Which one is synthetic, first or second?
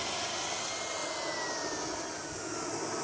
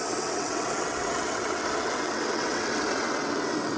second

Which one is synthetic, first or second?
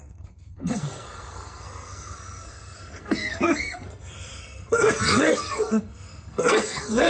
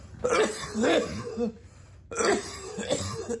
first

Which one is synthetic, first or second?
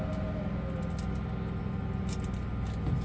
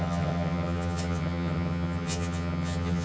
second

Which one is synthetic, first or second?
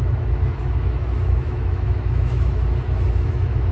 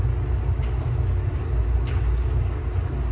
first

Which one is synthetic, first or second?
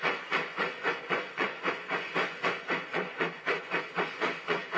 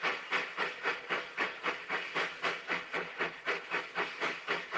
first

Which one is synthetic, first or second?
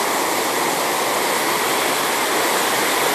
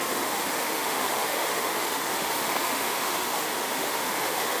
second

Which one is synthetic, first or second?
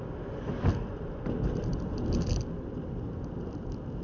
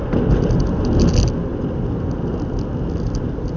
first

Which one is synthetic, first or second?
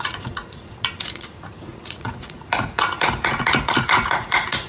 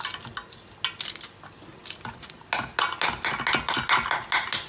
first